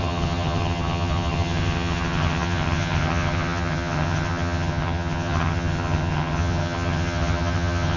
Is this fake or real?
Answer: fake